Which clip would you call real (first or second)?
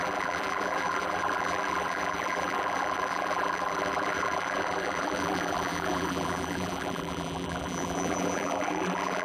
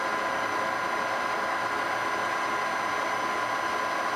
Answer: second